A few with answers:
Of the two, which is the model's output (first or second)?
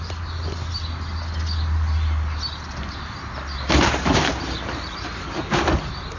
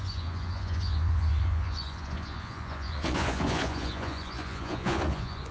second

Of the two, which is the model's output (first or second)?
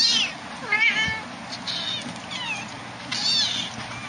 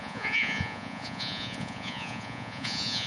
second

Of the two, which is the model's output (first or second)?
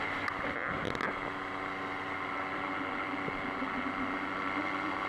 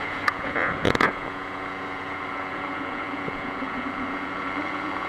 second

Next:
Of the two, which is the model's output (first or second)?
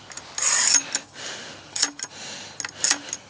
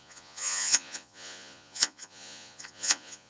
second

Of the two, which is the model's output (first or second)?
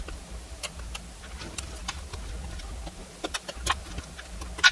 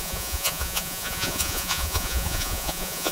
second